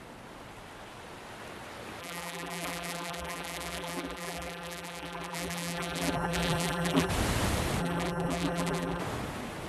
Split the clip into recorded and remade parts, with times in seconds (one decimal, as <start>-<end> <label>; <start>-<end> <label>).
0.0-2.0 recorded; 2.0-7.1 remade; 7.1-7.8 recorded; 7.8-9.0 remade; 9.0-9.7 recorded